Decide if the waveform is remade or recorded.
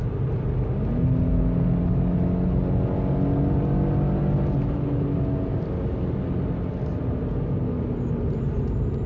recorded